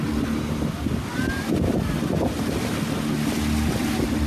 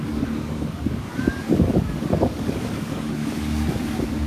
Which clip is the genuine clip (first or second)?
first